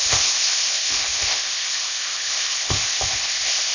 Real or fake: fake